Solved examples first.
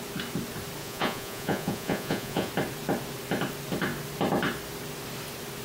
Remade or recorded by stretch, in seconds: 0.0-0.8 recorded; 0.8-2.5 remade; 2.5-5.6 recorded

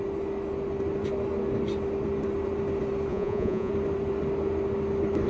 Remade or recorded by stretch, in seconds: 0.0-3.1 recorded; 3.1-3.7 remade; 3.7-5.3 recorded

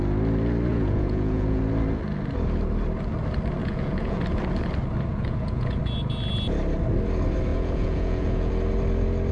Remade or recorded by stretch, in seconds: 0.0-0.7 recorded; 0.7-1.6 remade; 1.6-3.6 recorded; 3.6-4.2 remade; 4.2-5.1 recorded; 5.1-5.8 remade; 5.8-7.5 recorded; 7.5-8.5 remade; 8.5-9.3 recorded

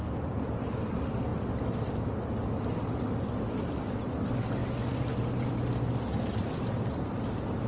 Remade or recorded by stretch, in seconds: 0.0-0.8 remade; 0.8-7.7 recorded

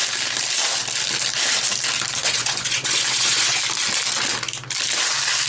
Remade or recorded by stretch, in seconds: 0.0-2.2 recorded; 2.2-3.6 remade; 3.6-5.5 recorded

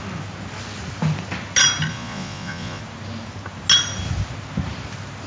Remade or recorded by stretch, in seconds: 0.0-1.9 recorded; 1.9-2.8 remade; 2.8-5.3 recorded